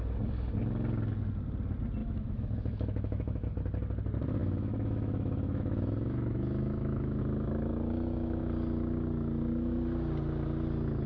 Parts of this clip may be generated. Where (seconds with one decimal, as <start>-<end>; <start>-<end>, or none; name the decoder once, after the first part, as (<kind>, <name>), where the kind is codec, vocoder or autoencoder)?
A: 2.0-3.5 (autoencoder, DAC-VAE); 4.4-7.2; 7.7-8.4